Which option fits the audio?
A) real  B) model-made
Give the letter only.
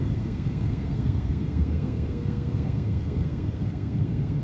B